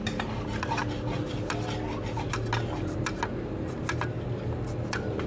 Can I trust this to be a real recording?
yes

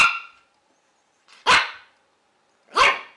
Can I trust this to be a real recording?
yes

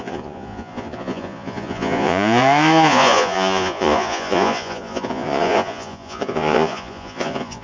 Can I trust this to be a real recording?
no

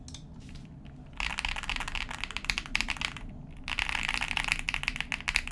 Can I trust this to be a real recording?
yes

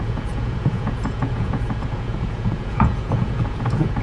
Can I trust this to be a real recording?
no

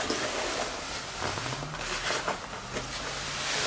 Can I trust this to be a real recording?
yes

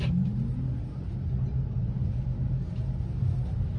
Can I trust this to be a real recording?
yes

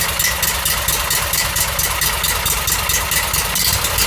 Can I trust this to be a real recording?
yes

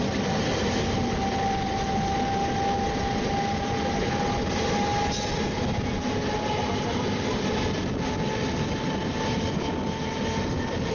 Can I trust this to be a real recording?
yes